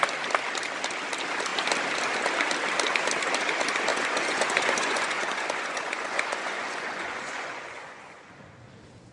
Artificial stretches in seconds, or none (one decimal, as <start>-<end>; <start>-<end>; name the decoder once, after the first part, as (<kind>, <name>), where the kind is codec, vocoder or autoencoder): 3.9-8.5 (vocoder, Vocos)